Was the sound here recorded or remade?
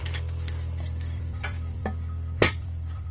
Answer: remade